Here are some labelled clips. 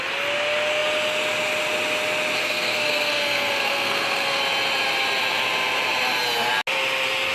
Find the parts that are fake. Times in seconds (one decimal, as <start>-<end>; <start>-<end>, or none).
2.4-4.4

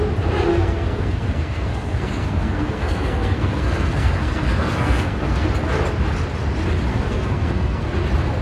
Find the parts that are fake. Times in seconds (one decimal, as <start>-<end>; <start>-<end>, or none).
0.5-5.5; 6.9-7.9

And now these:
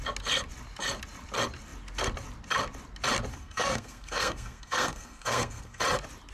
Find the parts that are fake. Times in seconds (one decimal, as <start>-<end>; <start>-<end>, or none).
3.3-5.8

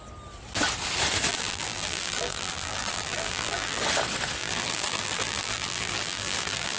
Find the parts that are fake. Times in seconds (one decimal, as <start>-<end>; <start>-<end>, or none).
1.3-3.8; 4.4-6.8